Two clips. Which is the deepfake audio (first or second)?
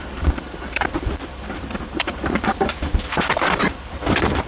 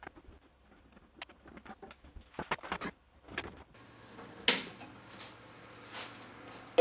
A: first